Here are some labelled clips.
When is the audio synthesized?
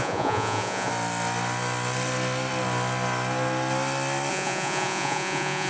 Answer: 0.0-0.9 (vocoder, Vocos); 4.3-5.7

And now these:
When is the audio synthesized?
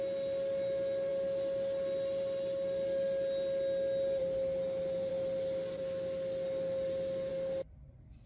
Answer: none